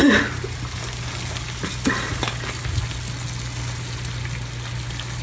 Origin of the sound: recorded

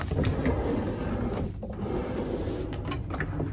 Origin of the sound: recorded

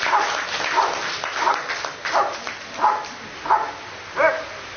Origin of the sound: recorded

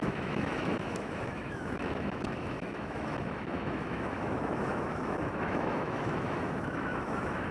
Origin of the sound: remade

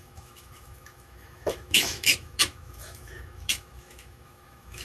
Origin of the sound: remade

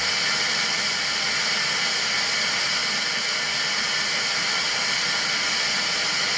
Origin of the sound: recorded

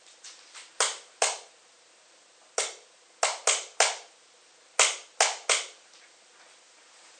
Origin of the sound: recorded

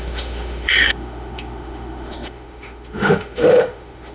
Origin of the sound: remade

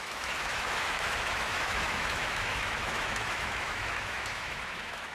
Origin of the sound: remade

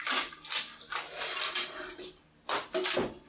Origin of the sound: recorded